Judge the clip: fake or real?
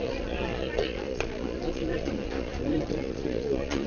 fake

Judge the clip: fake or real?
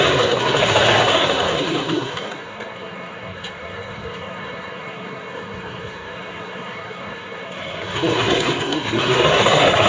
fake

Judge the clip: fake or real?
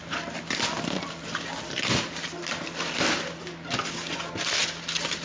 real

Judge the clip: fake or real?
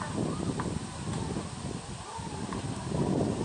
real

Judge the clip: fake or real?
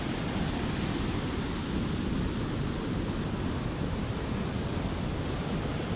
real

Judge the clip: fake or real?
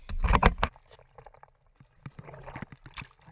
real